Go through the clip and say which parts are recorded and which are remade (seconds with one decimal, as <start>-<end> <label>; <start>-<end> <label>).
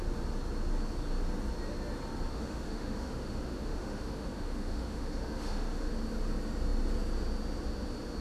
0.0-2.3 recorded; 2.3-5.9 remade; 5.9-8.2 recorded